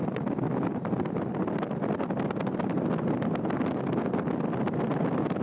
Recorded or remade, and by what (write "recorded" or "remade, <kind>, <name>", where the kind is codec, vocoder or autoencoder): recorded